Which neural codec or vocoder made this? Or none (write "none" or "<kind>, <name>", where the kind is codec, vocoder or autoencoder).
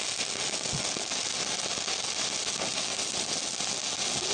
none